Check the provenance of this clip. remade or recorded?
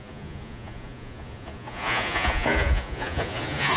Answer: remade